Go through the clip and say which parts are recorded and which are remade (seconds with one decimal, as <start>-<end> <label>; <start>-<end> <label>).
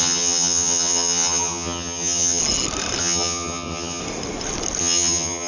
0.0-2.4 remade; 2.4-3.0 recorded; 3.0-4.0 remade; 4.0-4.8 recorded; 4.8-5.5 remade